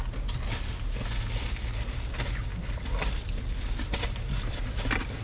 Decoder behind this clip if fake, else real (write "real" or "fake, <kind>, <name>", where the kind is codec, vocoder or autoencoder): real